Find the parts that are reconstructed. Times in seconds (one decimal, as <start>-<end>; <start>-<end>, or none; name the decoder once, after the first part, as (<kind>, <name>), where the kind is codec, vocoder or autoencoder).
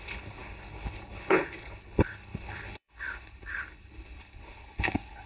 0.0-5.3 (codec, HILCodec)